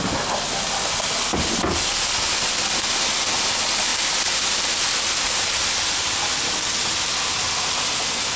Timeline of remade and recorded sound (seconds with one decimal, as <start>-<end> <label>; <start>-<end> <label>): 0.0-8.4 recorded

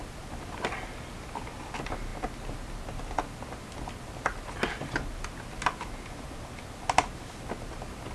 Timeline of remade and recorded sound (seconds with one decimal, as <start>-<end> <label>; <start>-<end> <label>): 0.0-8.1 recorded

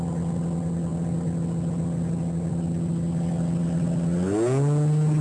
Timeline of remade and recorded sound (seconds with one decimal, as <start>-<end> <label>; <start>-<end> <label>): 0.0-5.2 recorded

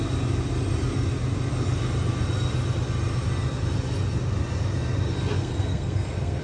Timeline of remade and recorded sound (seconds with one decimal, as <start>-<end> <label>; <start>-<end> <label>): 0.0-5.3 recorded; 5.3-6.4 remade

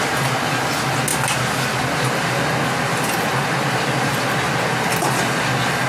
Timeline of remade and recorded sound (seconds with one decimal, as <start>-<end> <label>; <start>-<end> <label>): 0.0-5.9 recorded

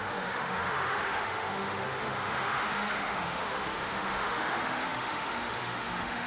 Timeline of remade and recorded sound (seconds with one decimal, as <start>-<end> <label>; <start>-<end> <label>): 0.0-6.3 remade

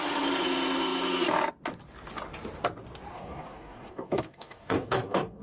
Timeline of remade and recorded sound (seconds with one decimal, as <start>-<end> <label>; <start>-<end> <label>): 0.0-3.1 recorded; 3.1-5.4 remade

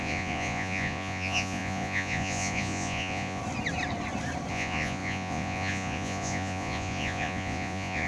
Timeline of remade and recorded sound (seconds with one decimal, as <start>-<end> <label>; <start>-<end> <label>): 0.0-3.4 remade; 3.4-4.5 recorded; 4.5-8.1 remade